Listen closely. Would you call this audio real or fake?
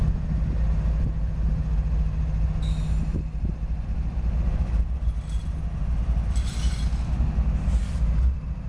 real